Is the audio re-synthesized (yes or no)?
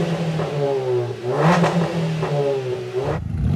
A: no